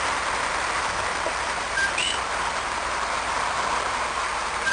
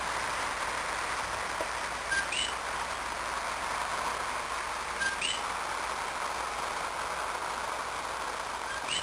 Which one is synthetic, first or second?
first